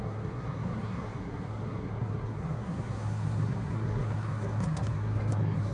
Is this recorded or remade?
remade